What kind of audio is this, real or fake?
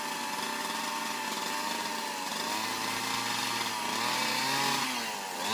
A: real